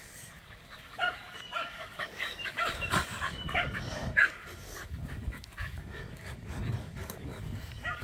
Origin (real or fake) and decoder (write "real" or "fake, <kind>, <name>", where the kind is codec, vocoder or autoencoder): fake, codec, DAC